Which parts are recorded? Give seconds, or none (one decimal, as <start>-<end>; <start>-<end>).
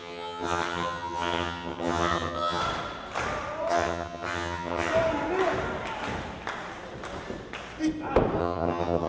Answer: 2.6-3.7; 4.9-8.4